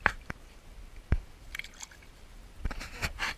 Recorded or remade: remade